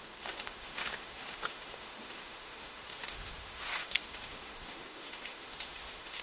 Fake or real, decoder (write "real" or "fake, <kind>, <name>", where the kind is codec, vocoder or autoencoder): fake, autoencoder, DAC-VAE